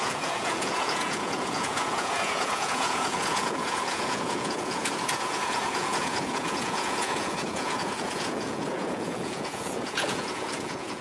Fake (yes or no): yes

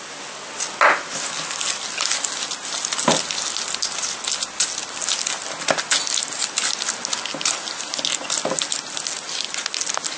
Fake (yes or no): no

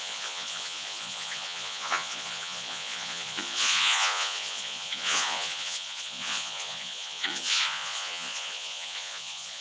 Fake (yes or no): yes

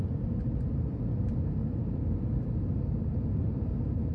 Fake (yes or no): no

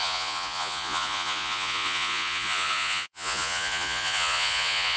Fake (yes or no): yes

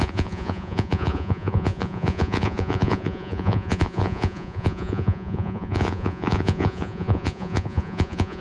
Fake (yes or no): yes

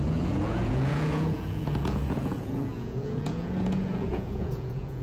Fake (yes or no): yes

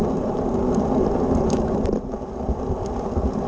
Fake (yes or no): no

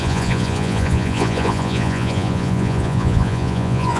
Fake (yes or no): yes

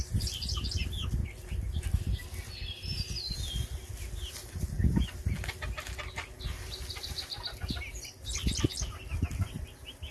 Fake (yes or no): no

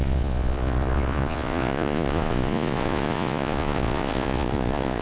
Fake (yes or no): yes